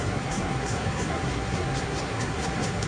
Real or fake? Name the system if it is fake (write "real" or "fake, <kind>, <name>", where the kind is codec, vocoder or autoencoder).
fake, codec, SNAC